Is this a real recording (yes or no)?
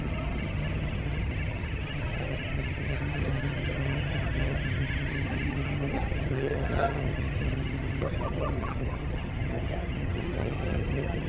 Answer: no